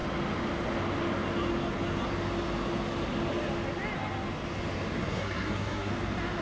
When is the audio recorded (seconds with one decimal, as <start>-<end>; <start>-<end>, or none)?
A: 0.0-5.0; 5.9-6.4